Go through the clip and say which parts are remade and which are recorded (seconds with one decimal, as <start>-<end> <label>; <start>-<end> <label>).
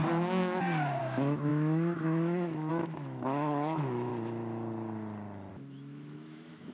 0.0-1.0 recorded; 1.0-4.1 remade; 4.1-5.5 recorded; 5.5-6.7 remade